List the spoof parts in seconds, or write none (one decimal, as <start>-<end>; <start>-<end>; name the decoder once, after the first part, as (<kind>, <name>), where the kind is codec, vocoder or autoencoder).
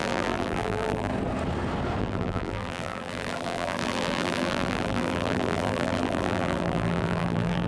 0.0-1.1 (vocoder, BigVGAN v2); 2.0-7.7